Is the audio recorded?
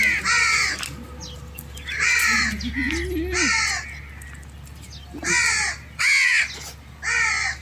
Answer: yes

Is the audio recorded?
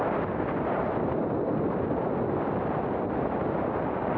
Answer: yes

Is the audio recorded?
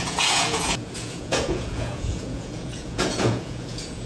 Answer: no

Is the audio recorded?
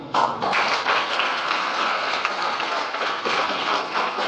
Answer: no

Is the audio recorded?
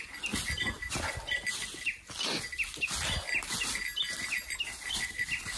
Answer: yes